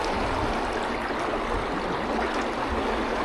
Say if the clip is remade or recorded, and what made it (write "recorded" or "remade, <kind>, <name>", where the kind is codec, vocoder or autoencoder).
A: recorded